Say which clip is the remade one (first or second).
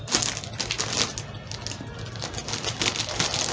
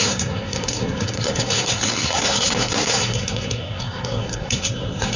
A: second